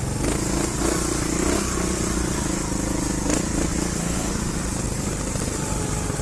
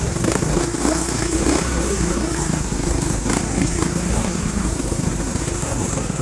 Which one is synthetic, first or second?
second